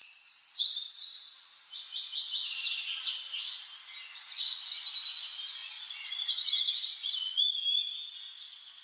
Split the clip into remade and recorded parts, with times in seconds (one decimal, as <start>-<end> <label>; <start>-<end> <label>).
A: 0.0-1.5 remade; 1.5-1.9 recorded; 1.9-3.1 remade; 3.1-5.6 recorded; 5.6-7.4 remade; 7.4-8.8 recorded